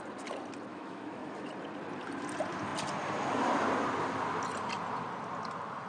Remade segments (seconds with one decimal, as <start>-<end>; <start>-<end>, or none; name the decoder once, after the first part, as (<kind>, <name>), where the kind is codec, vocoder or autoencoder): 0.7-1.5 (autoencoder, DAC-VAE)